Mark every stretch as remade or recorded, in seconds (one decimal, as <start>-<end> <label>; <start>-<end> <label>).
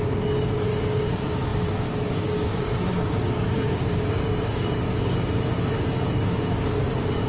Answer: 0.0-7.3 remade